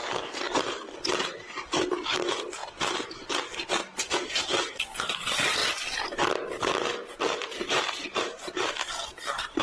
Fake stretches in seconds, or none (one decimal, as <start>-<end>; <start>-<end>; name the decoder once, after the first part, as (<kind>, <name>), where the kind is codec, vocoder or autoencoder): 1.2-2.6 (vocoder, BigVGAN v2); 4.1-5.6; 7.2-9.6